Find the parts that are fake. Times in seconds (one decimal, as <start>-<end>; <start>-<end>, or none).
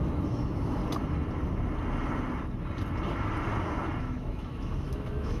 0.0-0.8; 4.0-5.4